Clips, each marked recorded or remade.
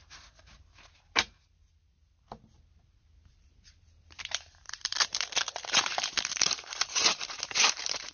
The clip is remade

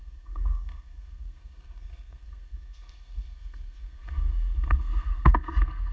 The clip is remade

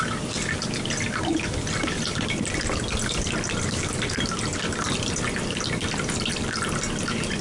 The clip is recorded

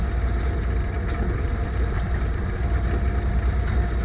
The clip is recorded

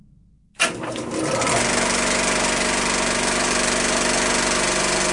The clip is recorded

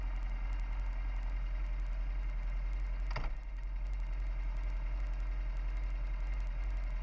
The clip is recorded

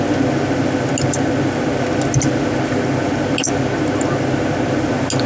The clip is recorded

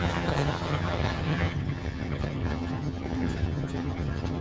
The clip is remade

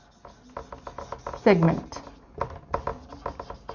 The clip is recorded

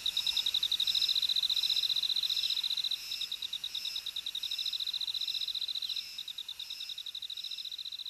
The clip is recorded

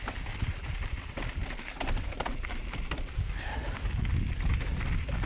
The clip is recorded